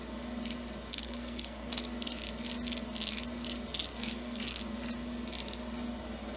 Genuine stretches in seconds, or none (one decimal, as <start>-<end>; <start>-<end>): 0.0-0.9; 1.7-3.9; 4.6-6.4